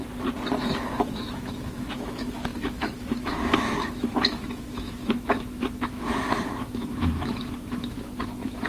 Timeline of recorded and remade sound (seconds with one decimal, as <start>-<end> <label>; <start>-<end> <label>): 0.0-0.6 recorded; 0.6-8.7 remade